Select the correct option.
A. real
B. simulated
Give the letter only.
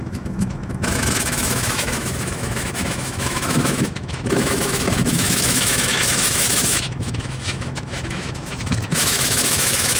B